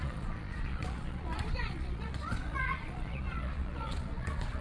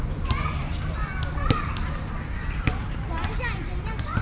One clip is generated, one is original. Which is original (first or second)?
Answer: second